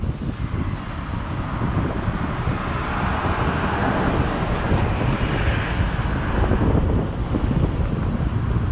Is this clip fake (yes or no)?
no